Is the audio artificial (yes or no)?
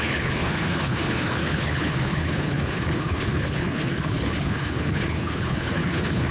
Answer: yes